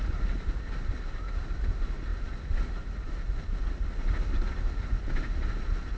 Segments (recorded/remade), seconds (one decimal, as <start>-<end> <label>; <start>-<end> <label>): 0.0-6.0 recorded